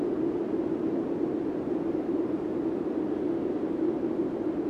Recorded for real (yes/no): yes